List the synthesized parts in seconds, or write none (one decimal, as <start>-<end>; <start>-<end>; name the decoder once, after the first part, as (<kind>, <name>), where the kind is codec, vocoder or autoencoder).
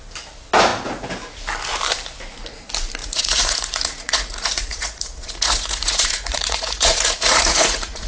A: 3.0-8.1 (vocoder, Vocos)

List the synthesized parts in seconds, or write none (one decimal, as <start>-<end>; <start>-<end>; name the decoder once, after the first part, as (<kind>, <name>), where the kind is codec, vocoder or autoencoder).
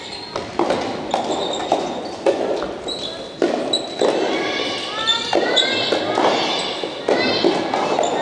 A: 1.6-2.4 (vocoder, Vocos)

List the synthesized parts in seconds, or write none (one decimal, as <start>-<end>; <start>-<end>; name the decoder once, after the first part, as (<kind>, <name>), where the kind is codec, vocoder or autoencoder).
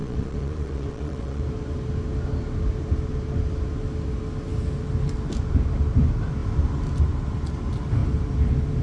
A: 0.0-1.4 (vocoder, Vocos)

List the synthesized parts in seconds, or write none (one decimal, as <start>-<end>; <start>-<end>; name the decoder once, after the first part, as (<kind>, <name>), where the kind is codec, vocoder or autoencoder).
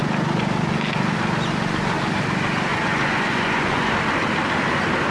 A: 2.7-3.9 (vocoder, Vocos)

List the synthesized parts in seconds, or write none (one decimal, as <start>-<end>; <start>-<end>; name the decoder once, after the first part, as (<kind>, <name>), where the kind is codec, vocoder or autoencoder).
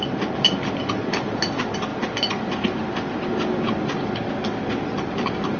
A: none